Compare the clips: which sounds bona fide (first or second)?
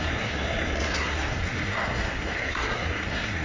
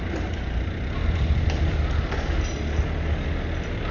second